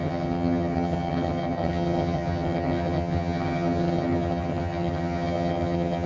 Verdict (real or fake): fake